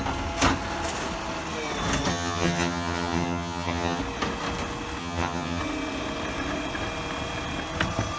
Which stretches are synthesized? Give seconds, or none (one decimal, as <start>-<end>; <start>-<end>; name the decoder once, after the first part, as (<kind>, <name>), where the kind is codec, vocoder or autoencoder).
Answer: 2.1-4.0 (vocoder, HiFi-GAN); 5.0-5.6